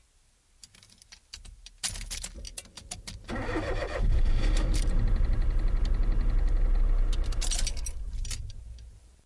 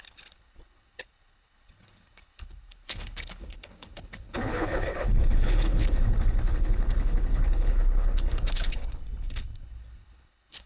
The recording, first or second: first